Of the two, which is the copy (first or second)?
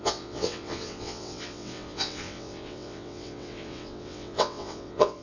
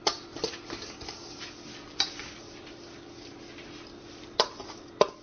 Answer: first